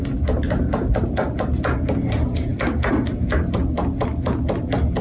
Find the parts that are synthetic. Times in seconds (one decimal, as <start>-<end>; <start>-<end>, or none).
none